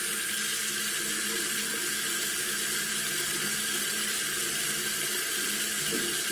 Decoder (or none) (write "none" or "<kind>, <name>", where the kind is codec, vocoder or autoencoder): none